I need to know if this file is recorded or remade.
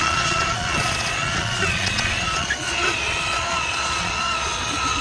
remade